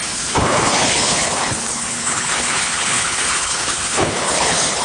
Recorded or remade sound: remade